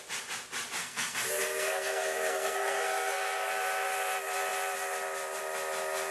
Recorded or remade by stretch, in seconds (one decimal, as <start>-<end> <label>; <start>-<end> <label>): 0.0-0.8 recorded; 0.8-3.5 remade; 3.5-6.1 recorded